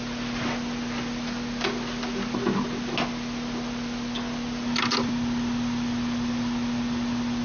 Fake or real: real